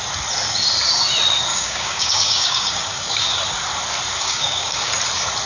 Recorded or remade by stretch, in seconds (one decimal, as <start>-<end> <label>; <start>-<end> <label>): 0.0-1.5 recorded; 1.5-3.4 remade; 3.4-4.1 recorded; 4.1-4.9 remade; 4.9-5.5 recorded